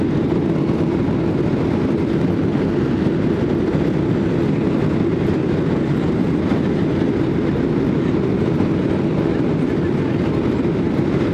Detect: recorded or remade recorded